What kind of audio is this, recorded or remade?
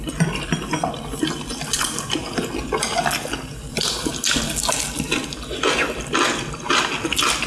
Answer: recorded